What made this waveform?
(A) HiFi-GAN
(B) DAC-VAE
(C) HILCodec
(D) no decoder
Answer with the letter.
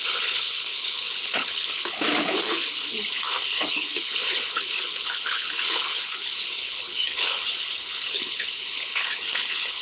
C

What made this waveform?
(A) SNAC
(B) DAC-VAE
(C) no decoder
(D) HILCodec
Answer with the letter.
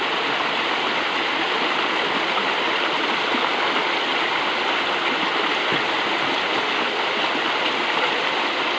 C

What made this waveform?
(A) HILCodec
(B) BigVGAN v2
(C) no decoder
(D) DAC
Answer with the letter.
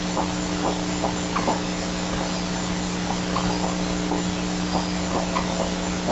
C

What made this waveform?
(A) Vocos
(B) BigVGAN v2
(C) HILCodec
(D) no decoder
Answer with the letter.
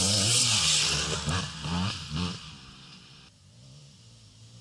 D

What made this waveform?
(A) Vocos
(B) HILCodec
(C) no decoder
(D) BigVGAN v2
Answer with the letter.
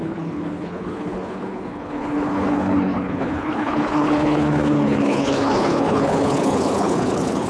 B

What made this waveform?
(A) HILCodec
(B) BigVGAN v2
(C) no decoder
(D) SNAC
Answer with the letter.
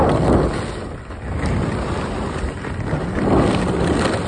C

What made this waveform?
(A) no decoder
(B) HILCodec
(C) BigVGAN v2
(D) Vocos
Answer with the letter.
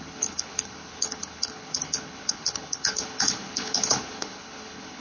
B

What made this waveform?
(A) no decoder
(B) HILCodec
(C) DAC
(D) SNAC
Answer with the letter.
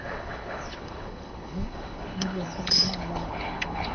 B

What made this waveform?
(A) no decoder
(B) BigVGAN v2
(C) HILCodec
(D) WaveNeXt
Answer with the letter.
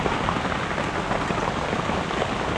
A